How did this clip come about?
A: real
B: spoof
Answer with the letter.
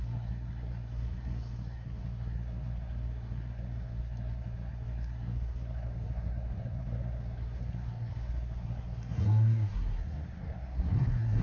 B